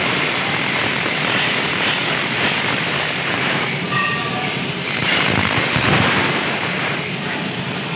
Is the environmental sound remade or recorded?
remade